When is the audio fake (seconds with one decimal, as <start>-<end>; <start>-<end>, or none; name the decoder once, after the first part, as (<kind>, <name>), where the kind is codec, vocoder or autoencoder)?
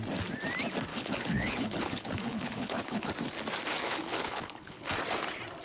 0.9-3.1 (codec, HILCodec); 3.8-4.9